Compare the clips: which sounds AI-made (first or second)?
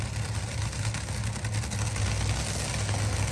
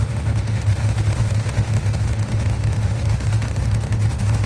second